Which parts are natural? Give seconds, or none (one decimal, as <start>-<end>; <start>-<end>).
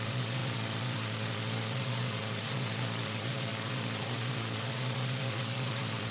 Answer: none